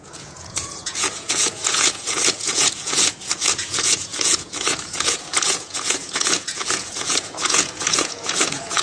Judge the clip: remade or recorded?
remade